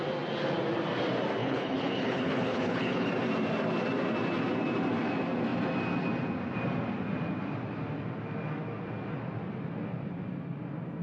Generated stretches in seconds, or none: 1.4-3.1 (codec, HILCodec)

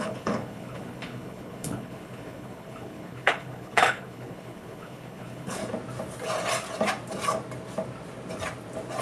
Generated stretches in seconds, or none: 0.0-5.6 (codec, HILCodec)

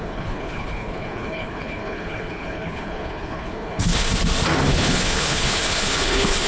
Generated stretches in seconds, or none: 0.0-4.1 (codec, HILCodec); 4.7-6.5

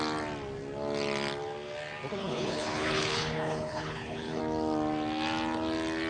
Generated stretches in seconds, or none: 2.2-4.4 (codec, HILCodec)

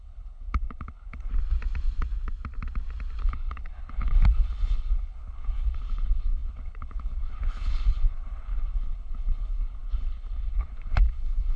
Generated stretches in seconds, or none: 0.0-1.3 (codec, HILCodec); 3.2-11.6

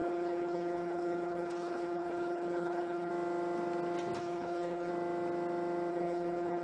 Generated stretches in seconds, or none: 0.0-3.1 (codec, HILCodec); 4.2-4.9; 5.9-6.6